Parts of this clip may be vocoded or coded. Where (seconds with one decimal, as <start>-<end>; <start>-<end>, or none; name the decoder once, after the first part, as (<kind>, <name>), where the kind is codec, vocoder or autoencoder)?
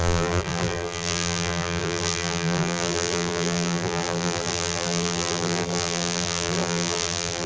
0.0-7.5 (vocoder, BigVGAN v2)